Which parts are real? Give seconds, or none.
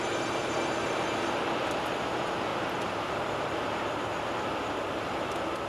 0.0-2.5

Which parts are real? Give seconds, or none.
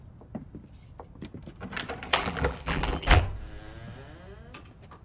0.0-2.1; 3.2-5.0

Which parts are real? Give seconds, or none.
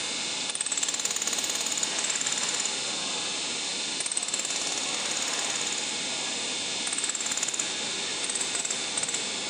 0.0-8.1; 8.6-9.5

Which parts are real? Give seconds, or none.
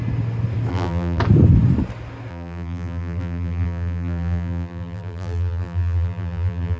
0.0-0.7; 1.2-2.3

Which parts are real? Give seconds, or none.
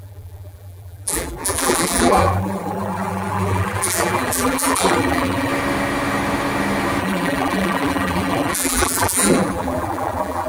5.5-7.0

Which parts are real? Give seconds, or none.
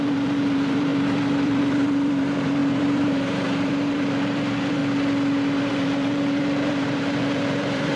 4.8-5.6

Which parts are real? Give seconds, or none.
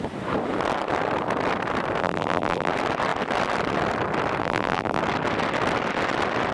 0.0-2.0; 2.7-4.4; 5.0-6.5